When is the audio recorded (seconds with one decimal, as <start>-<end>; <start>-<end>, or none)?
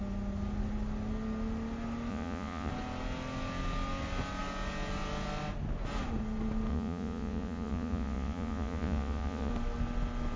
0.0-2.1; 2.7-6.7; 9.5-10.4